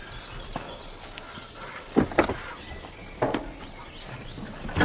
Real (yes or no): yes